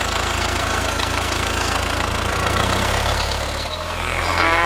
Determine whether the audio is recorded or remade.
remade